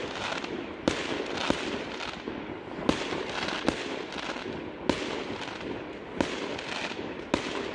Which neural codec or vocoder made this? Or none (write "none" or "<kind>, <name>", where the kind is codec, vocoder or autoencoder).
none